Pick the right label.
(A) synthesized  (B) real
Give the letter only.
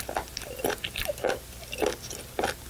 B